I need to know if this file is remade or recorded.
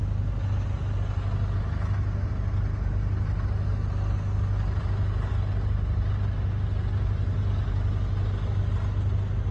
recorded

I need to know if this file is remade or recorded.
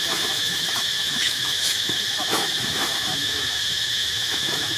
remade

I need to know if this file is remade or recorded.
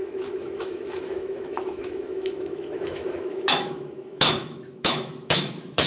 remade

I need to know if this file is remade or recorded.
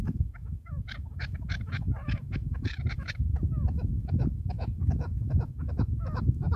remade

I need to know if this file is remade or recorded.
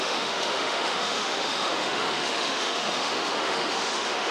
remade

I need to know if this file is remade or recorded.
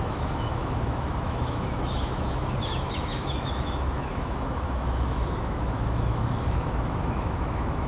remade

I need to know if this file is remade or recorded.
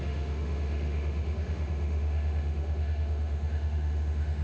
remade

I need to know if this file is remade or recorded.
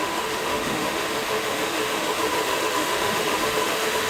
remade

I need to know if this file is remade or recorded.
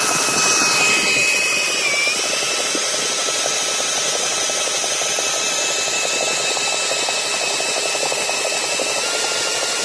recorded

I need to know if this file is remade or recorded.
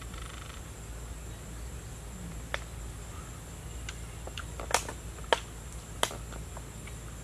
recorded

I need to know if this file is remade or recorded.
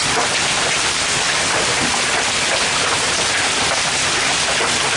recorded